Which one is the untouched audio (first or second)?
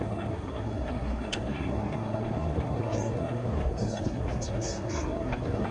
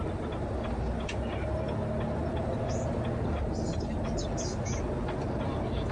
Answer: second